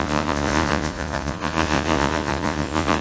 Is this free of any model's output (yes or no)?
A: no